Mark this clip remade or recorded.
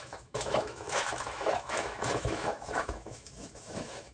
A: remade